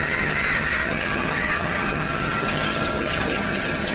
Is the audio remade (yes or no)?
yes